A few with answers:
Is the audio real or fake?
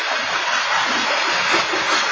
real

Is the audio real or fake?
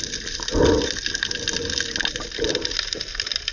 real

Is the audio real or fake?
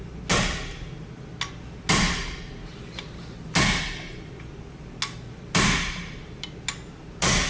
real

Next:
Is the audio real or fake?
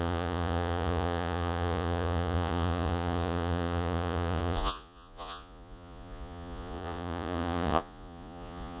fake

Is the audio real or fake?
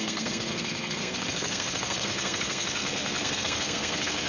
fake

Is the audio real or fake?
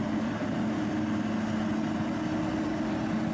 real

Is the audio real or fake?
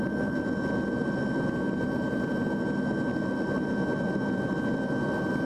real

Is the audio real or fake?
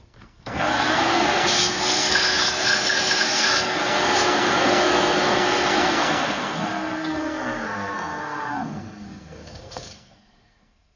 fake